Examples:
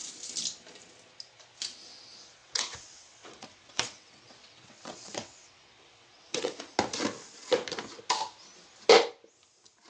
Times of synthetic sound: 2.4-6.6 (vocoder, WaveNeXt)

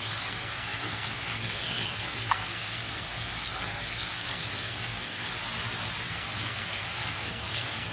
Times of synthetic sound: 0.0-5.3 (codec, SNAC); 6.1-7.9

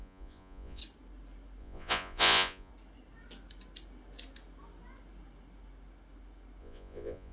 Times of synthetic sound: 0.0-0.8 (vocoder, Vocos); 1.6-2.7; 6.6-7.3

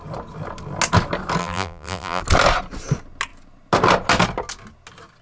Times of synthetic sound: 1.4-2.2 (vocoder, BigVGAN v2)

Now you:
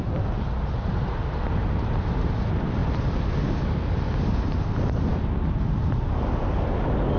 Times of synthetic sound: none

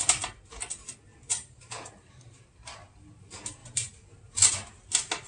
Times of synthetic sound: 1.1-2.4 (vocoder, BigVGAN v2); 3.6-4.5